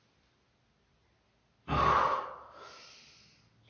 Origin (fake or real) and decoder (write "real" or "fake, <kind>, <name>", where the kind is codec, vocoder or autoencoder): real